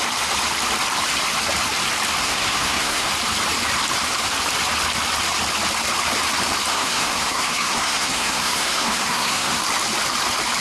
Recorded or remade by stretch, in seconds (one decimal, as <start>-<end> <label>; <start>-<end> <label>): 0.0-2.2 recorded; 2.2-3.1 remade; 3.1-6.7 recorded; 6.7-9.6 remade; 9.6-10.6 recorded